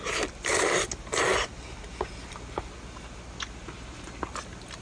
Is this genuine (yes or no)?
yes